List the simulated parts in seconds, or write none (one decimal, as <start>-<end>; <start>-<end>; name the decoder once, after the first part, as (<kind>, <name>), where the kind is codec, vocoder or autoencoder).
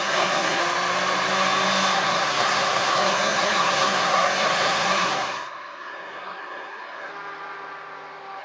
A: 0.0-0.6 (codec, SNAC); 1.9-7.1